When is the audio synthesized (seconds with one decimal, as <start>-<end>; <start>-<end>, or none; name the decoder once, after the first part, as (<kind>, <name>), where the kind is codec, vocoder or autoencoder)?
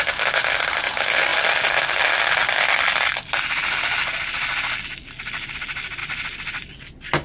none